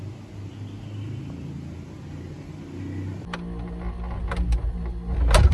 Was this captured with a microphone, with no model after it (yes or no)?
yes